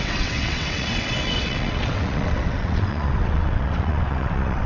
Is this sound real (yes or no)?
no